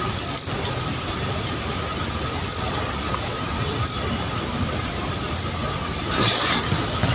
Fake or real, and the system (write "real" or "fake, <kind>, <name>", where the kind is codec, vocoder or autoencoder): real